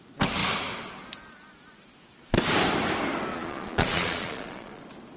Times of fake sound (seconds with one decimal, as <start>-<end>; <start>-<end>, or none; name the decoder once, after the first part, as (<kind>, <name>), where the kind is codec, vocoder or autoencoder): 3.3-4.8 (vocoder, Vocos)